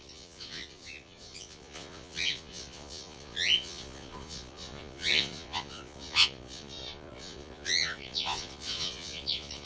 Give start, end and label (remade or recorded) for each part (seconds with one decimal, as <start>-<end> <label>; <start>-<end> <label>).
0.0-9.7 remade